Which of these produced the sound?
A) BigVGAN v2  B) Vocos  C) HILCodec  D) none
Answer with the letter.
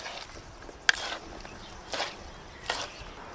D